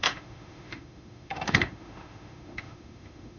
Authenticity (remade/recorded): remade